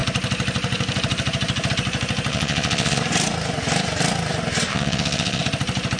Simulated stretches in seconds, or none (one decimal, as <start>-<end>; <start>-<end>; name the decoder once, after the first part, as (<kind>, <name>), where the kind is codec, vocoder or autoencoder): 2.3-3.0 (vocoder, Vocos); 4.7-5.4